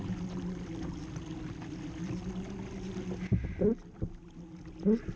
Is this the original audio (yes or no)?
yes